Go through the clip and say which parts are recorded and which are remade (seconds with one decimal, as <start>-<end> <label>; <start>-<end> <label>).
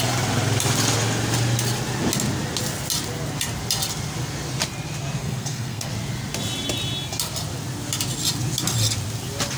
0.0-5.2 recorded; 5.2-5.9 remade; 5.9-9.6 recorded